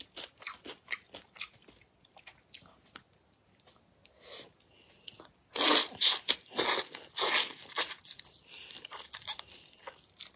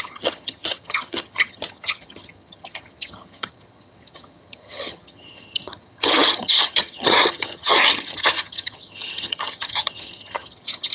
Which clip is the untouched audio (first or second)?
first